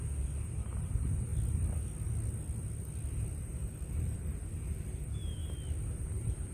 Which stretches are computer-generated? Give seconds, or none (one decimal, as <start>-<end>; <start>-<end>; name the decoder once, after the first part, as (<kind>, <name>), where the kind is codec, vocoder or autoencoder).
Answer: 0.0-1.3 (vocoder, BigVGAN v2); 4.0-5.4; 6.0-6.5